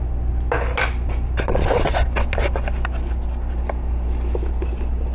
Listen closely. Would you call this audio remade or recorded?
recorded